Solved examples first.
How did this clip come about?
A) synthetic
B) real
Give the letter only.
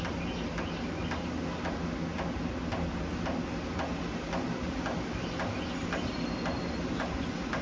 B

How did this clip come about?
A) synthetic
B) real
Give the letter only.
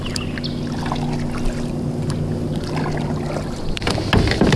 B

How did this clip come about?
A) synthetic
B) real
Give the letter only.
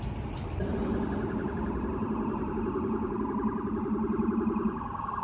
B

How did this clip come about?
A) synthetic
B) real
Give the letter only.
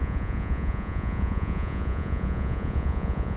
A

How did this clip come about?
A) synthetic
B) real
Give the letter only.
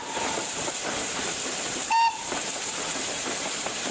B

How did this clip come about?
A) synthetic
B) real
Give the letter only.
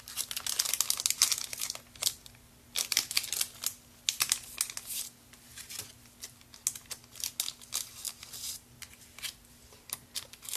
B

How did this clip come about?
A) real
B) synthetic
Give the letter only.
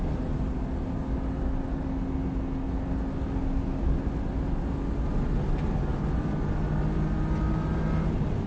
A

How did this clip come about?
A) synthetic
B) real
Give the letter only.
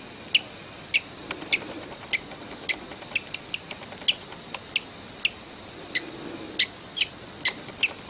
B